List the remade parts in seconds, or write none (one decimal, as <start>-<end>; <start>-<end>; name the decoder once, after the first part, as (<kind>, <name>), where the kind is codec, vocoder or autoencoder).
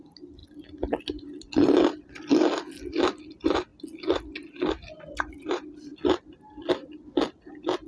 none